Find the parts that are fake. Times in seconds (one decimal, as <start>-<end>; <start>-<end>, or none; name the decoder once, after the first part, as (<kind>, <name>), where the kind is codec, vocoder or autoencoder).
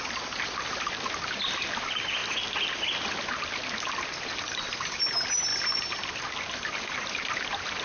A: none